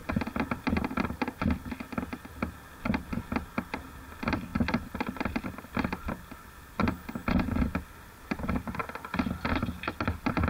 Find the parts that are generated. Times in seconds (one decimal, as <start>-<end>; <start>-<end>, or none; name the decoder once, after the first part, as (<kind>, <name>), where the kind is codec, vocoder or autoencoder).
4.5-5.6 (vocoder, BigVGAN v2)